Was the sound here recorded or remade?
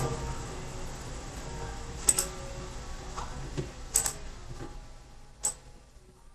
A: recorded